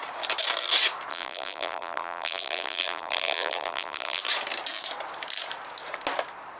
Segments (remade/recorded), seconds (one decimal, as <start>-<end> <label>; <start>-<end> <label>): 0.0-1.1 recorded; 1.1-4.2 remade; 4.2-6.6 recorded

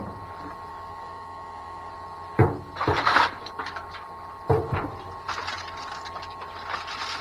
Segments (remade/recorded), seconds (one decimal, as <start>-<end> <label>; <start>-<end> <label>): 0.0-0.7 recorded; 0.7-1.9 remade; 1.9-7.2 recorded

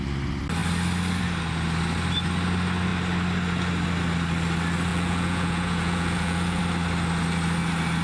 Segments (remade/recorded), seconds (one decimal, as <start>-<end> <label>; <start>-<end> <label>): 0.0-4.9 recorded; 4.9-6.6 remade; 6.6-8.0 recorded

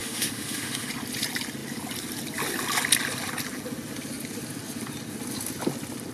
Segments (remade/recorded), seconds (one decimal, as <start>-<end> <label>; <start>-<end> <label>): 0.0-0.9 remade; 0.9-6.1 recorded

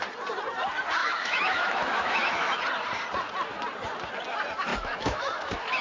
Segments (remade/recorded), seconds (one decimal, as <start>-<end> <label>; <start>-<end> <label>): 0.0-1.0 recorded; 1.0-2.6 remade; 2.6-4.7 recorded; 4.7-5.8 remade

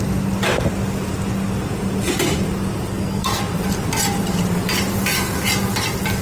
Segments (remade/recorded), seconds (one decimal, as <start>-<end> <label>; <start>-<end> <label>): 0.0-2.9 recorded; 2.9-3.4 remade; 3.4-6.2 recorded